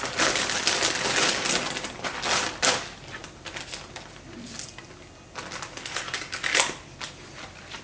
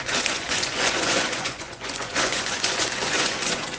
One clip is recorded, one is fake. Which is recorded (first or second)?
first